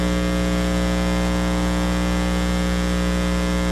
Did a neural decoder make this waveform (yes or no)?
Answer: no